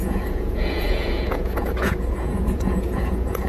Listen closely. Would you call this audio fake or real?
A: fake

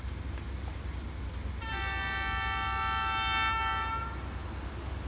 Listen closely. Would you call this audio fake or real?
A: real